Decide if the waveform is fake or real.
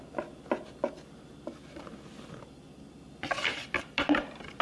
real